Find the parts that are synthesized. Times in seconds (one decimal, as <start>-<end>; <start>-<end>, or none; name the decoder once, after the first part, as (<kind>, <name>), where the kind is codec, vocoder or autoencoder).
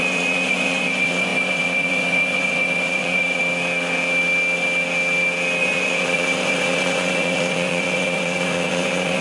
0.0-3.4 (vocoder, Vocos); 5.6-9.2